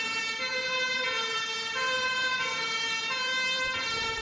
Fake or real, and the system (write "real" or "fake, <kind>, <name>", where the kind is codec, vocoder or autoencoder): fake, vocoder, BigVGAN v2